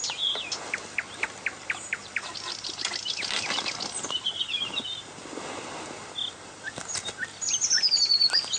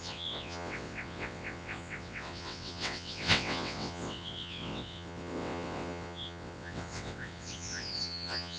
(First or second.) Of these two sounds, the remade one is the second